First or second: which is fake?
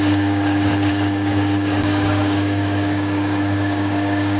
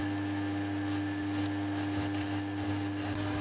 first